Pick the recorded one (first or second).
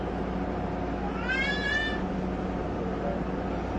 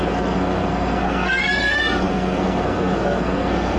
first